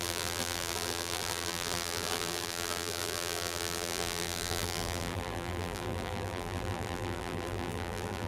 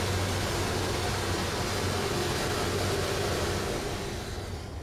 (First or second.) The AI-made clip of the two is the first